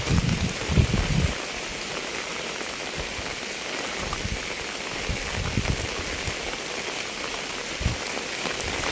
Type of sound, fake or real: real